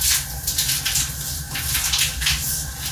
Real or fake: real